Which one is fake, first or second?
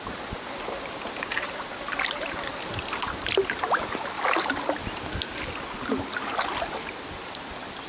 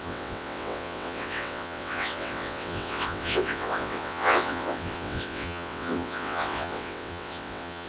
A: second